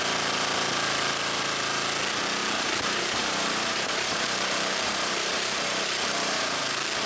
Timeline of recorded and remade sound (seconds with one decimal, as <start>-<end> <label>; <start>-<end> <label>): 0.0-2.4 recorded; 2.4-6.6 remade; 6.6-7.1 recorded